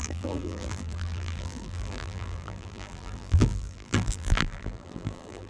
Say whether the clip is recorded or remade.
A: remade